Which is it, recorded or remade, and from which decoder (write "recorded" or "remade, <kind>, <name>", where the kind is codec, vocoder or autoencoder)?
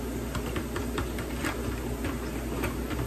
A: recorded